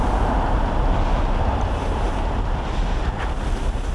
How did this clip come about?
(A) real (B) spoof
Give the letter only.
A